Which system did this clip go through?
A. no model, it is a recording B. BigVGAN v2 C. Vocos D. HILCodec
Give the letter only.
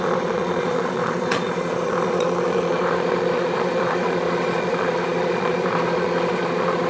C